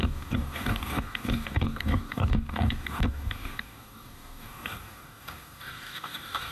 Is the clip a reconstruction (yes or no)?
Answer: yes